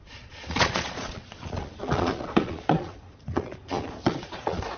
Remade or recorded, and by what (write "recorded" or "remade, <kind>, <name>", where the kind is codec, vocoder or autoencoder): remade, vocoder, Vocos